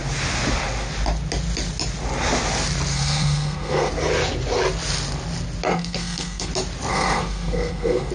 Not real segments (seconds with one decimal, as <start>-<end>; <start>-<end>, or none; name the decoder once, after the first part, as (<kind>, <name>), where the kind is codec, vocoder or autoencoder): 2.9-3.9 (codec, SNAC); 5.7-6.5; 6.9-8.1